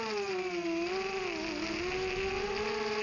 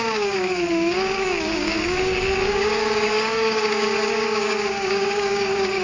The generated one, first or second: second